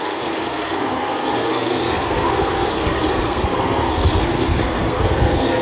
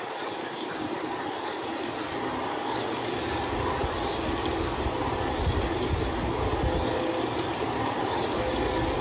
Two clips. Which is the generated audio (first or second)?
first